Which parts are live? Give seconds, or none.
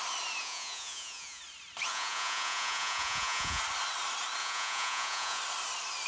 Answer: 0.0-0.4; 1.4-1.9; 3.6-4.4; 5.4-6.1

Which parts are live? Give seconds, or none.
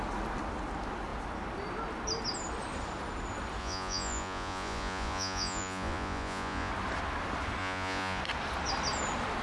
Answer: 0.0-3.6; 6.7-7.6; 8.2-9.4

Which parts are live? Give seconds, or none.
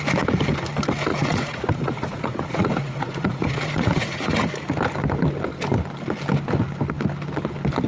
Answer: 0.0-1.1; 4.5-7.9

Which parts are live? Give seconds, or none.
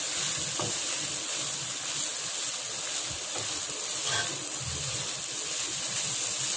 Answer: 0.0-6.6